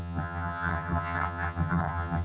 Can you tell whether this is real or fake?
fake